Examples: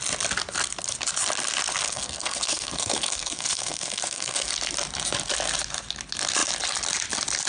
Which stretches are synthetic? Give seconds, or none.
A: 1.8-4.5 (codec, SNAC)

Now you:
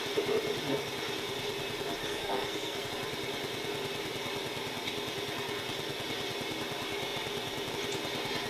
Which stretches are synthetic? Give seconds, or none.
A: 2.0-2.9 (codec, SNAC)

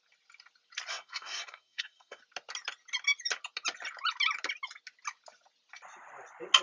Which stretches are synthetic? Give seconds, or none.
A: 0.9-2.2 (codec, SNAC)

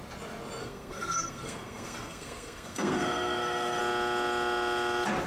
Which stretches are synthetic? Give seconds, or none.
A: 0.6-3.8 (codec, SNAC)

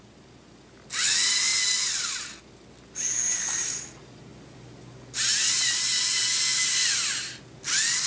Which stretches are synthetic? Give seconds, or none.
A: none

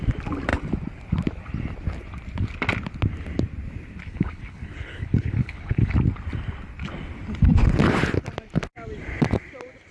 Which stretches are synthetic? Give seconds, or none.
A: 4.0-5.9 (codec, HILCodec)

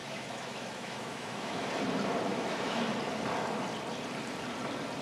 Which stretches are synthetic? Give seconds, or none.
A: 0.0-1.7 (autoencoder, DAC-VAE); 2.3-2.8